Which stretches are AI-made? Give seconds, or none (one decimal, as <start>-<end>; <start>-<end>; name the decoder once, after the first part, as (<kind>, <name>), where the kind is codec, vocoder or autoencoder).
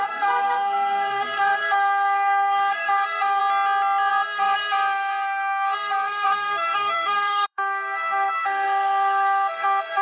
0.0-3.4 (codec, SNAC); 4.1-10.0